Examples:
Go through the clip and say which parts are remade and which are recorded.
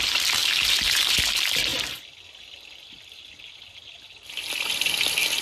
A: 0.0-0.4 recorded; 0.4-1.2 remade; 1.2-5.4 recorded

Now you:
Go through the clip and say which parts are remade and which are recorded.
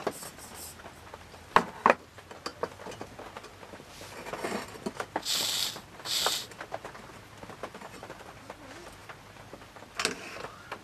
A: 0.0-10.8 recorded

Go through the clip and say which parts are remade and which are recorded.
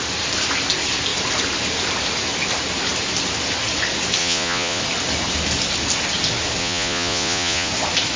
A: 0.0-4.2 recorded; 4.2-4.8 remade; 4.8-6.6 recorded; 6.6-7.7 remade; 7.7-8.2 recorded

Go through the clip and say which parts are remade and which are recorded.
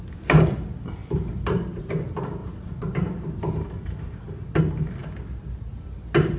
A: 0.0-2.4 recorded; 2.4-4.6 remade; 4.6-6.4 recorded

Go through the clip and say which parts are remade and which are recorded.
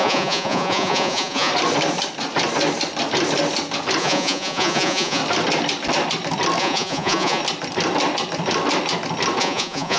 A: 0.0-1.5 remade; 1.5-4.0 recorded; 4.0-5.2 remade; 5.2-6.6 recorded; 6.6-7.4 remade; 7.4-9.4 recorded; 9.4-10.0 remade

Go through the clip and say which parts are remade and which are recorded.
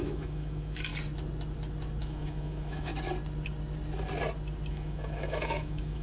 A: 0.0-0.9 remade; 0.9-2.0 recorded; 2.0-2.9 remade; 2.9-4.7 recorded; 4.7-6.0 remade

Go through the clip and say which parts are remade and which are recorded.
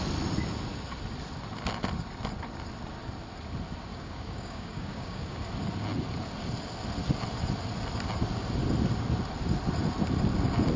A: 0.0-3.9 recorded; 3.9-5.4 remade; 5.4-10.8 recorded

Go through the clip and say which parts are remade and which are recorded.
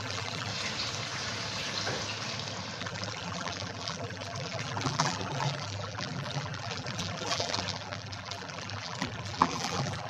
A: 0.0-0.5 remade; 0.5-2.8 recorded; 2.8-10.1 remade